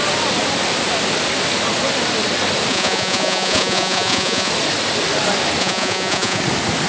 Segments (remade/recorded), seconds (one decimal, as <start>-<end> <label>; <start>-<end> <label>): 0.0-2.7 recorded; 2.7-4.5 remade; 4.5-5.6 recorded; 5.6-6.4 remade; 6.4-6.9 recorded